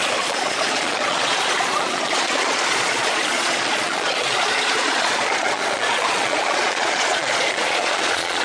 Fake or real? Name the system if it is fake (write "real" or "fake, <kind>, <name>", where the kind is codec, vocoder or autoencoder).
fake, vocoder, Vocos